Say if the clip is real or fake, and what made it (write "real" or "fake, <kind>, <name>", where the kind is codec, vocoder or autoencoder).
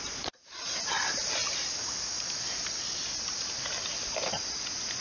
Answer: real